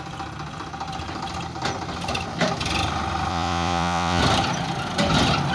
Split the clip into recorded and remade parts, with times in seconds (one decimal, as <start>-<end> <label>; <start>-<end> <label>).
0.0-3.3 recorded; 3.3-4.2 remade; 4.2-5.5 recorded